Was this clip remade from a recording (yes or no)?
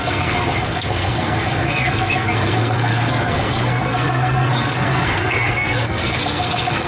yes